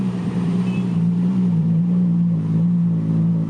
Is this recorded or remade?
remade